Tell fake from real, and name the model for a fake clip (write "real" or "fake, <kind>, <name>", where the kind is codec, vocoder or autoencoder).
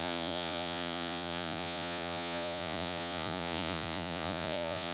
fake, vocoder, Vocos